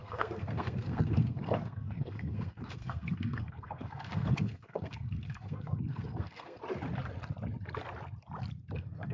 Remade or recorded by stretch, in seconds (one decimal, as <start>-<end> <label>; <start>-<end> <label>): 0.0-6.6 remade; 6.6-8.7 recorded; 8.7-9.1 remade